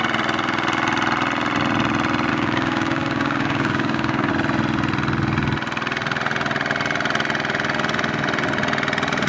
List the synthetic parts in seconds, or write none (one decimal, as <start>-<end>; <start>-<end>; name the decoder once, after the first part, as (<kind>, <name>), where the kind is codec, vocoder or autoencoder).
2.3-4.3 (codec, DAC)

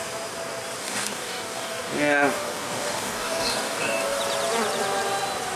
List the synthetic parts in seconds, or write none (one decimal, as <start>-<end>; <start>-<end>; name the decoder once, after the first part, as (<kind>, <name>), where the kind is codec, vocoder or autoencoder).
0.8-4.2 (codec, DAC)

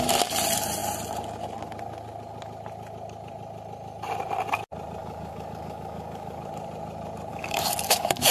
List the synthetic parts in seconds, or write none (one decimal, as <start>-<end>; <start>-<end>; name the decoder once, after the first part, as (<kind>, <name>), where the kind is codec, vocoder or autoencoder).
5.0-6.5 (codec, DAC); 7.3-8.3

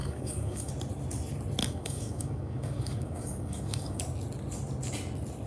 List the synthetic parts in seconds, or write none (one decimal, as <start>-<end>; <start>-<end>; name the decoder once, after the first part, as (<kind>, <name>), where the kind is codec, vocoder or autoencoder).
0.0-0.7 (codec, DAC); 1.6-4.0